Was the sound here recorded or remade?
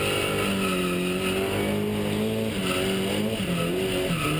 recorded